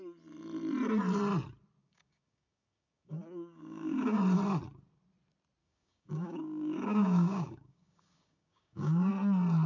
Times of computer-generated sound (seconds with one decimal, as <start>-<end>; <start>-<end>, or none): 1.8-4.2; 5.6-9.1